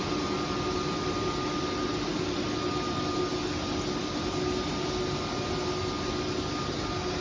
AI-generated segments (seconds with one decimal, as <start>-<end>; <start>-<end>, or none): none